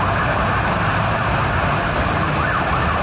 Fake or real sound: real